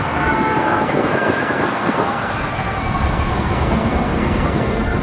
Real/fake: fake